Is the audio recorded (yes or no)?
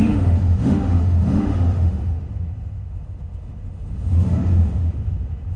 no